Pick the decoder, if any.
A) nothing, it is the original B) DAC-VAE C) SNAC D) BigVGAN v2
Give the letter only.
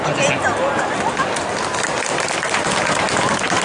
A